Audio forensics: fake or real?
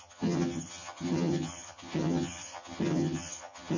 fake